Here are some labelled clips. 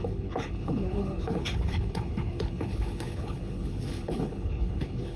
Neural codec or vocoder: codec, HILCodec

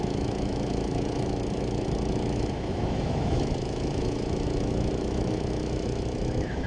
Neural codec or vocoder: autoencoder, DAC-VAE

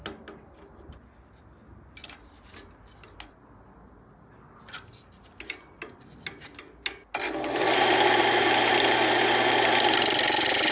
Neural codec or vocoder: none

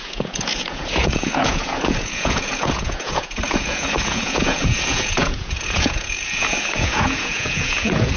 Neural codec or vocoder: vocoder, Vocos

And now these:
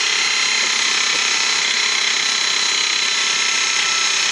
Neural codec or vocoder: vocoder, BigVGAN v2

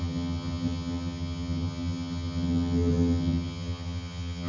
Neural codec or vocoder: vocoder, HiFi-GAN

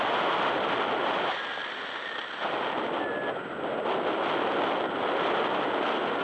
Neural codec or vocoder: none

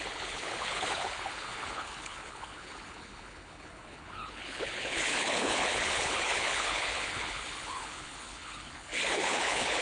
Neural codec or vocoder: codec, HILCodec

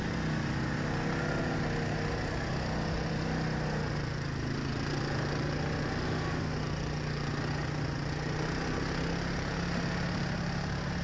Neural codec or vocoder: none